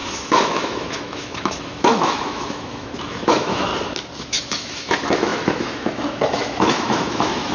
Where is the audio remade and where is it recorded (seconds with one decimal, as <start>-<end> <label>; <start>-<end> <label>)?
0.0-3.7 remade; 3.7-4.2 recorded; 4.2-7.5 remade